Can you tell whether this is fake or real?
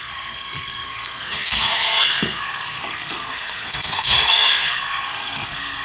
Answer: fake